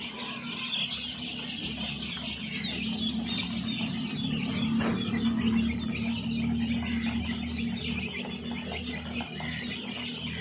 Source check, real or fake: real